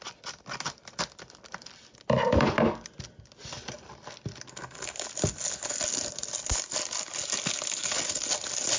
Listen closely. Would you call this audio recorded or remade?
recorded